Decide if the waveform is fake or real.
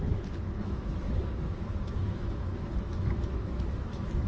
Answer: fake